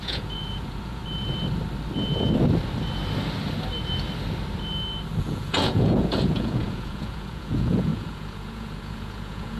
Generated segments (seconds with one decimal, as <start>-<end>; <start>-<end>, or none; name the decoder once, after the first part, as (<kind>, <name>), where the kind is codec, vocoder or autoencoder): 0.0-1.0 (vocoder, Vocos); 5.2-9.6